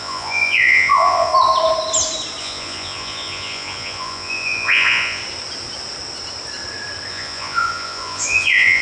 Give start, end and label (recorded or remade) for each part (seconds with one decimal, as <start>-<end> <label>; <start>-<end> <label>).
0.0-1.3 remade; 1.3-2.4 recorded; 2.4-5.2 remade; 5.2-7.1 recorded; 7.1-8.8 remade